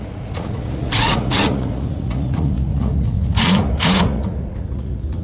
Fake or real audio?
fake